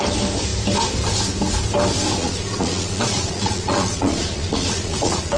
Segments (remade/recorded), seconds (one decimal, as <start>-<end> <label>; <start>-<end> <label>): 0.0-2.2 recorded; 2.2-5.4 remade